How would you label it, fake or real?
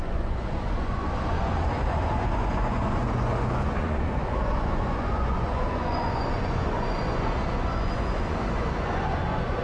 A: fake